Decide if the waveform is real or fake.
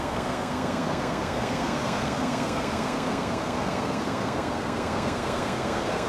fake